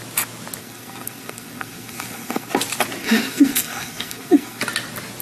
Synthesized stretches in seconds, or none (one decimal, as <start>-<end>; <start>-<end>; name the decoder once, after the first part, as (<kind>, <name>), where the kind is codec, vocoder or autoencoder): 0.6-2.5 (codec, SNAC); 3.0-4.6

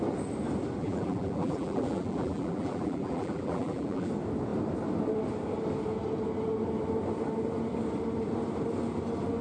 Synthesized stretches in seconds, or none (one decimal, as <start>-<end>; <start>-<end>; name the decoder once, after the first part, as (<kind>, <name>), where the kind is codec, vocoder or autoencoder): 0.8-4.1 (vocoder, BigVGAN v2)

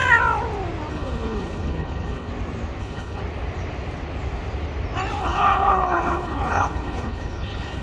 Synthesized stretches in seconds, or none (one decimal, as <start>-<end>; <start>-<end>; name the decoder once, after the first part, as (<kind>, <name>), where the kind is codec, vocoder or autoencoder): 0.9-2.3 (codec, HILCodec); 2.8-3.2; 5.2-7.8

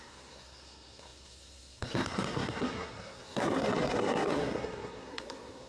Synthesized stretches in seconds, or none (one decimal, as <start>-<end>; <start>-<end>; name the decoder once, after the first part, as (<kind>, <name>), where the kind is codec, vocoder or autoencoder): 0.0-5.7 (codec, SNAC)